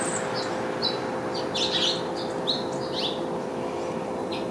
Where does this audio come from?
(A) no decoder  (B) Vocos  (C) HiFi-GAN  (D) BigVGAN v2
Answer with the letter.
A